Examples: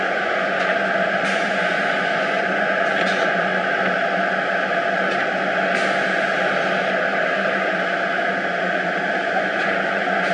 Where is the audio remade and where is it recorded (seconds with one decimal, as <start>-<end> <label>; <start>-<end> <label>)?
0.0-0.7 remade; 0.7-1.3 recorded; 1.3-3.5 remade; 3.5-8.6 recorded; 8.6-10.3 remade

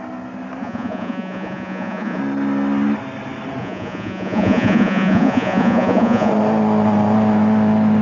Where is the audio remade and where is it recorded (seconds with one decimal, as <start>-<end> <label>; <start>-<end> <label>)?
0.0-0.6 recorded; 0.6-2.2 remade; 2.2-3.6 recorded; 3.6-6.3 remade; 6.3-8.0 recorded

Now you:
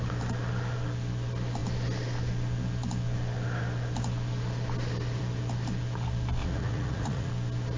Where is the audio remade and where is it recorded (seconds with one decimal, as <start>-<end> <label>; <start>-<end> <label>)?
0.0-6.4 recorded; 6.4-7.3 remade; 7.3-7.8 recorded

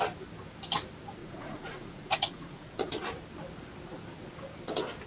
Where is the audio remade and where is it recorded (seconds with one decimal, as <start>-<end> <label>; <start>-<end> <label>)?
0.0-1.2 recorded; 1.2-2.9 remade; 2.9-5.1 recorded

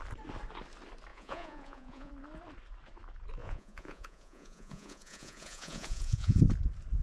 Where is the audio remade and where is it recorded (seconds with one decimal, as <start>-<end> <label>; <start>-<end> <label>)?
0.0-1.1 recorded; 1.1-2.1 remade; 2.1-3.4 recorded; 3.4-6.4 remade; 6.4-7.0 recorded

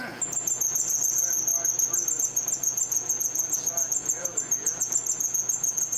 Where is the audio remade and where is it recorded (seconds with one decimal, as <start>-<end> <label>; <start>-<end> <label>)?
0.0-1.5 remade; 1.5-2.2 recorded; 2.2-6.0 remade

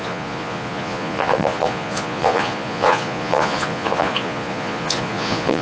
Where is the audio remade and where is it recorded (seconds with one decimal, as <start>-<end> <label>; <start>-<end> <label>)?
0.0-5.6 remade

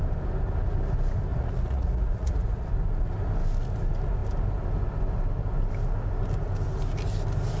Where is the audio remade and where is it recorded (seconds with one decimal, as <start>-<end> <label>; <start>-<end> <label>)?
0.0-1.3 recorded; 1.3-2.7 remade; 2.7-7.6 recorded